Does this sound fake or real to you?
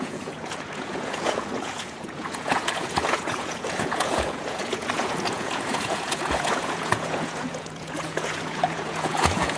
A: fake